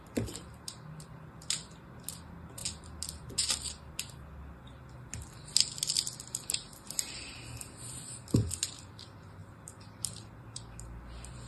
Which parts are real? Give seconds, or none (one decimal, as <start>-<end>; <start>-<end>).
0.0-9.4